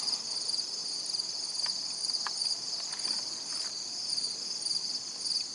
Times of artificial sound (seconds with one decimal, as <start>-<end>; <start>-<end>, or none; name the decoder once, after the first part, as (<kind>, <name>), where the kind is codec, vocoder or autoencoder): none